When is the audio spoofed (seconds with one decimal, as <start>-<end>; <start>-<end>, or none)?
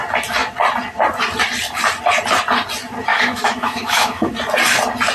3.1-4.3